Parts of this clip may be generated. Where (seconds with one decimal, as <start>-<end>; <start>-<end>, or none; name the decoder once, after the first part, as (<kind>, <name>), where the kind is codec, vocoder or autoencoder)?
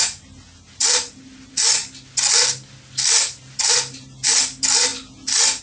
none